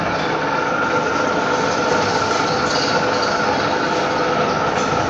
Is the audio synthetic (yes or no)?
no